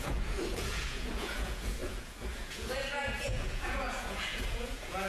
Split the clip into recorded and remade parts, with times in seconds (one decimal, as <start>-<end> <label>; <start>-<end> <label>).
0.0-5.1 remade